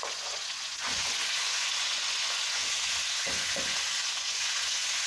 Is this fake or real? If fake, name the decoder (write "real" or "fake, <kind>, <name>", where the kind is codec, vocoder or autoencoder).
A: fake, vocoder, Vocos